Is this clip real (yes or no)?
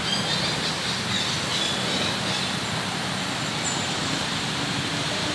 yes